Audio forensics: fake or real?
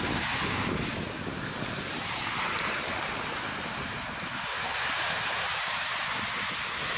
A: real